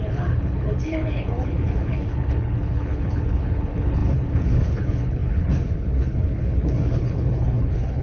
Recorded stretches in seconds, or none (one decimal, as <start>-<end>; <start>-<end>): none